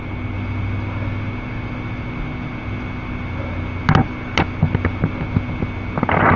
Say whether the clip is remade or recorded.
recorded